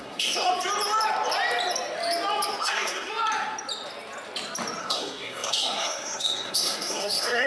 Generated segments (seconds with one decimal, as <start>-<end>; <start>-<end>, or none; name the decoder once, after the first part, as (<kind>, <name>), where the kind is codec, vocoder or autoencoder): 0.0-0.5 (codec, SNAC); 2.6-3.1; 4.8-7.5